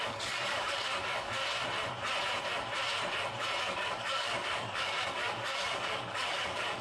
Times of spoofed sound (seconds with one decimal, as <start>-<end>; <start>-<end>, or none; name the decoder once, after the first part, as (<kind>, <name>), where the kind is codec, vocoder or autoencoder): 0.0-1.4 (codec, DAC); 3.6-6.8